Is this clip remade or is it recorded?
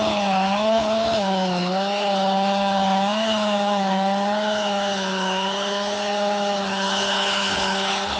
remade